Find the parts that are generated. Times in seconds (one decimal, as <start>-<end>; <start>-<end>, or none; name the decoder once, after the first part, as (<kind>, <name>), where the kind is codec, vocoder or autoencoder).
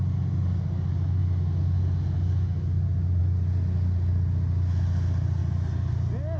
none